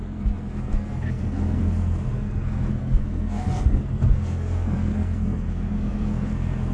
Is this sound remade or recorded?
remade